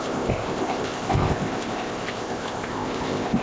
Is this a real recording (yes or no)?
no